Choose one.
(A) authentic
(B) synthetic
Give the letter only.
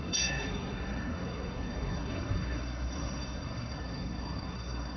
B